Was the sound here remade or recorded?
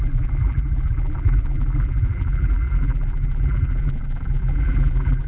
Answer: remade